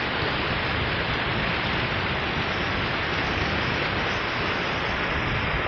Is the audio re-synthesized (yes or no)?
no